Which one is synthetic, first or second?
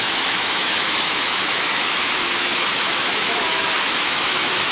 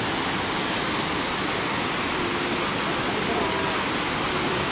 first